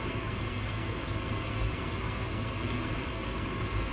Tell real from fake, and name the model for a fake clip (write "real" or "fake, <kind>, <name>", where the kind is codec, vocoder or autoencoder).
fake, codec, SNAC